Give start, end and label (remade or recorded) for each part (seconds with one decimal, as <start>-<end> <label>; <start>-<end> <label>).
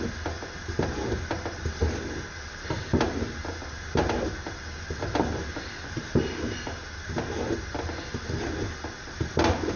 0.0-9.8 recorded